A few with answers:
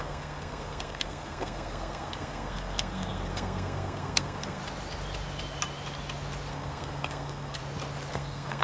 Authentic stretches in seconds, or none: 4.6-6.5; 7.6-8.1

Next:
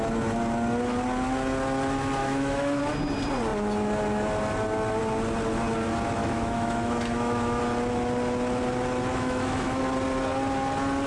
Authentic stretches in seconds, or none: 0.0-2.2; 2.8-6.2; 7.6-9.1; 9.8-11.1

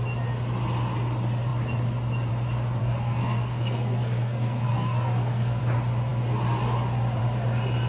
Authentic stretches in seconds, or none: 0.0-2.8; 5.6-7.9